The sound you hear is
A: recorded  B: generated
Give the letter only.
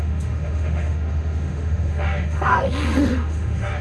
B